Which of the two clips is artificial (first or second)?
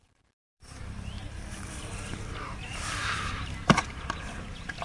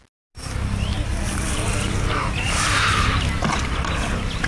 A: first